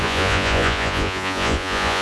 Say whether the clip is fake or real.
fake